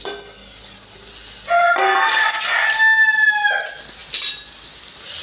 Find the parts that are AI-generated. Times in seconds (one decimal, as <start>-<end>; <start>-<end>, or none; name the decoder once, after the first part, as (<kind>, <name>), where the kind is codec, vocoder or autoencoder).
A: none